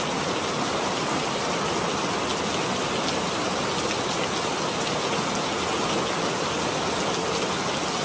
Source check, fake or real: real